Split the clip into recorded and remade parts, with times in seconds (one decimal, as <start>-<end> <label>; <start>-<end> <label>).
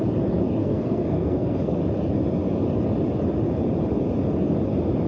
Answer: 0.0-0.6 recorded; 0.6-1.8 remade; 1.8-5.1 recorded